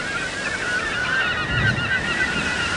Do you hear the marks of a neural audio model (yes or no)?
no